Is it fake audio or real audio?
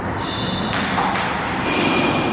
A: real